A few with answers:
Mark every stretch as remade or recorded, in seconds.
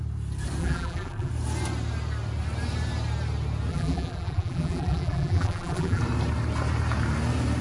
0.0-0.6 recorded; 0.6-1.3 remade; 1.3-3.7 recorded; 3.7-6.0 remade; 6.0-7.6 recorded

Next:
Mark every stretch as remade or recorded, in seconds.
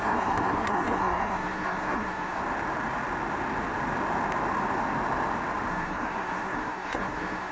0.0-2.4 remade; 2.4-5.7 recorded; 5.7-7.5 remade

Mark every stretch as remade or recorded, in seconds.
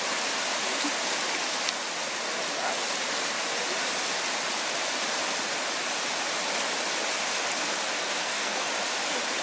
0.0-8.0 recorded; 8.0-8.7 remade; 8.7-9.4 recorded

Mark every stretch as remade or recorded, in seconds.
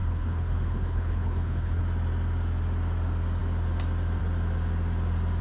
0.0-1.8 remade; 1.8-5.4 recorded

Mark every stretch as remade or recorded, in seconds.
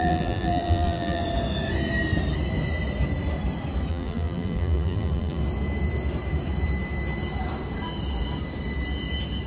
0.0-1.2 remade; 1.2-3.9 recorded; 3.9-5.4 remade; 5.4-9.5 recorded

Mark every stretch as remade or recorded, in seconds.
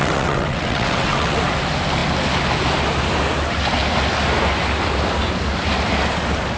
0.0-1.4 remade; 1.4-6.6 recorded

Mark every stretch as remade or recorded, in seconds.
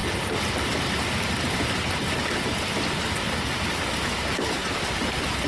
0.0-4.6 recorded; 4.6-5.5 remade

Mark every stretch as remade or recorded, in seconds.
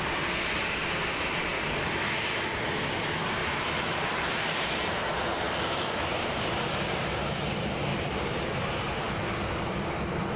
0.0-3.4 recorded; 3.4-4.4 remade; 4.4-6.1 recorded; 6.1-7.2 remade; 7.2-10.4 recorded